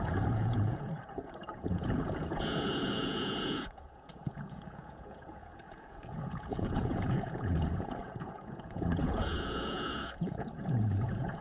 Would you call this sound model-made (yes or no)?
yes